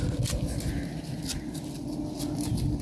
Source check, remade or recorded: recorded